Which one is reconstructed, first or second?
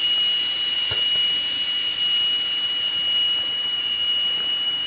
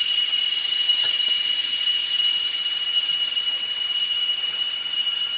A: second